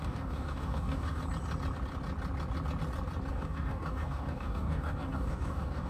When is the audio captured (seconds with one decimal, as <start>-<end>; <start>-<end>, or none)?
1.2-3.3